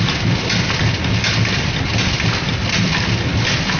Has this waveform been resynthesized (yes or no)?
no